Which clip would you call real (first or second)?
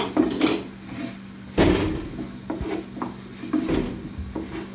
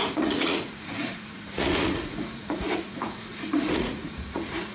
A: first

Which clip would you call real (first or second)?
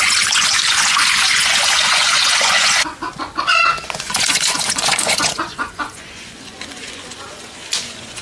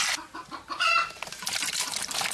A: second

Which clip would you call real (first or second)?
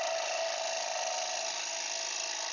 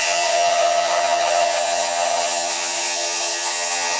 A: first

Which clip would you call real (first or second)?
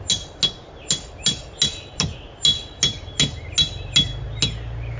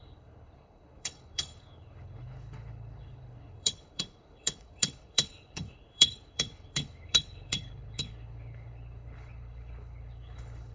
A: first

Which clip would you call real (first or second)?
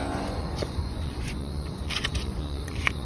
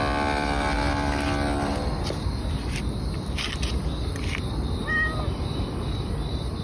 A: second